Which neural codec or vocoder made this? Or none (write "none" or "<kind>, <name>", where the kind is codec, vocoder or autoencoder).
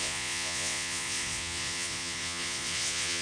vocoder, Vocos